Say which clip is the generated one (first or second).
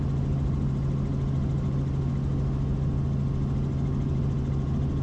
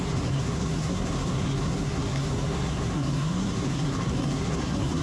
second